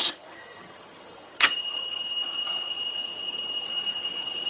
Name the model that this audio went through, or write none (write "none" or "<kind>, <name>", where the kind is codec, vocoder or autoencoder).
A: vocoder, HiFi-GAN